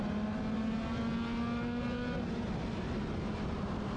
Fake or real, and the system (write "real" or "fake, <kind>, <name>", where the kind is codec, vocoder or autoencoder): real